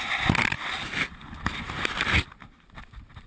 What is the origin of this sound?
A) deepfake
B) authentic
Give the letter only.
B